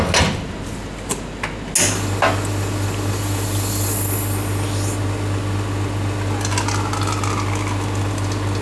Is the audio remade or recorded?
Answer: recorded